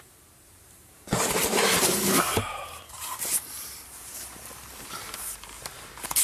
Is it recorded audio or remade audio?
remade